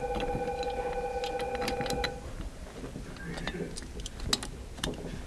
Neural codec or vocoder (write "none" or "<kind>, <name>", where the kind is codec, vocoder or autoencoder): none